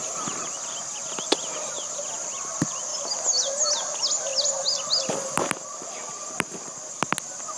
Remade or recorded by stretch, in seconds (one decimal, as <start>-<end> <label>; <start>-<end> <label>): 0.0-7.6 recorded